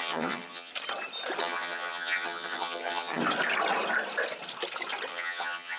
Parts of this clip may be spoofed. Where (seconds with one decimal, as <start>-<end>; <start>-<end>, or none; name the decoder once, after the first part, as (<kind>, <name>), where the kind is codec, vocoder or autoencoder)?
0.0-0.7 (vocoder, HiFi-GAN); 1.4-3.2; 5.1-5.8